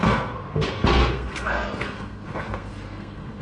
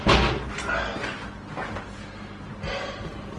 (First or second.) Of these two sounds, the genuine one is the second